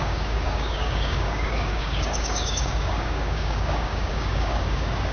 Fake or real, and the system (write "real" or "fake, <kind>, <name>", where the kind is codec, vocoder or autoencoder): fake, codec, DAC